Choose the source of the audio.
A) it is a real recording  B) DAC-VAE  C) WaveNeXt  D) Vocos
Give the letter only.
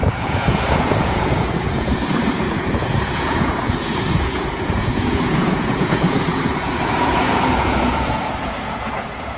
D